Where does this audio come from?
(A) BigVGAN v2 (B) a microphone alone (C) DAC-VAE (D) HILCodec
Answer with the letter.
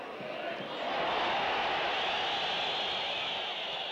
B